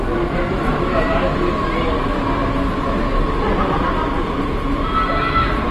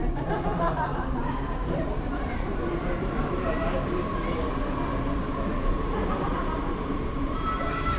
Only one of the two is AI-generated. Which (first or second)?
second